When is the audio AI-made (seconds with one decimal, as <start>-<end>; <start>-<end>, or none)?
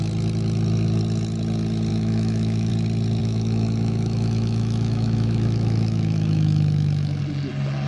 1.9-2.7; 3.2-7.2